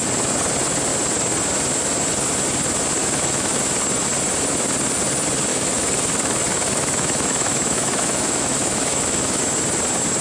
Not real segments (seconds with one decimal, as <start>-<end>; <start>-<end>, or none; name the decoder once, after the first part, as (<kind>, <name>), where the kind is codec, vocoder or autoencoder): 3.0-3.7 (autoencoder, DAC-VAE); 5.5-9.4